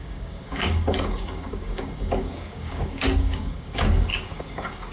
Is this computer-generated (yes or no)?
yes